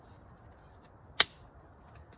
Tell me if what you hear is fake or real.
real